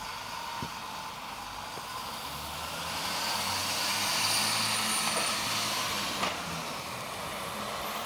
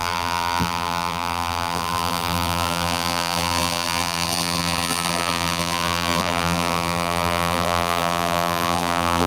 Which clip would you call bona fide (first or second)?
first